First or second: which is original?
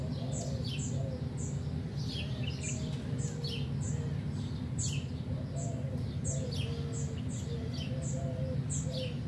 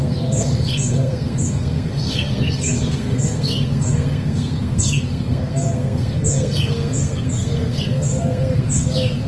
first